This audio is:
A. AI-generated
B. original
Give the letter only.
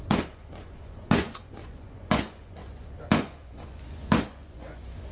A